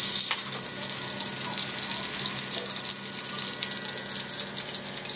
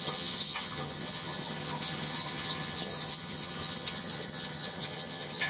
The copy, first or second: second